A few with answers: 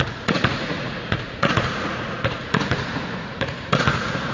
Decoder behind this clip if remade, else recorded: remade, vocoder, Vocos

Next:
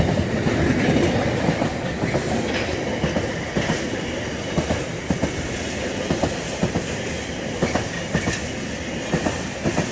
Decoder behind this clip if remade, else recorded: recorded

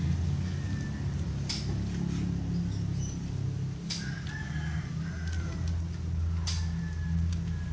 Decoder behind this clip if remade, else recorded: recorded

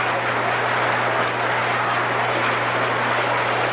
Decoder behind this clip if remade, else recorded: recorded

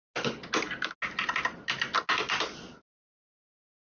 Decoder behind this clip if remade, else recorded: recorded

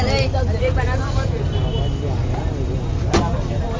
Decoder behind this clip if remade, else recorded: recorded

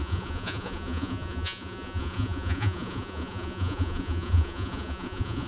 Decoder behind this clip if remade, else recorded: remade, vocoder, Vocos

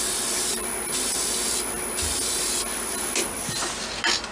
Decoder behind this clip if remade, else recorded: recorded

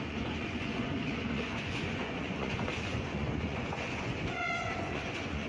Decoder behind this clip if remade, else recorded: remade, vocoder, Vocos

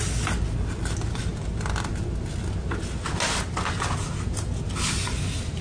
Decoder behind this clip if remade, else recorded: recorded